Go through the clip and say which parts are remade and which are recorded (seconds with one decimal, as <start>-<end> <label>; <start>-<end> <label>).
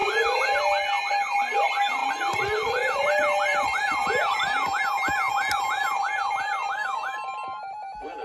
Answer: 0.0-2.0 recorded; 2.0-4.8 remade; 4.8-8.2 recorded